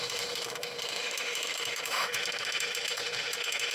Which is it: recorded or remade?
remade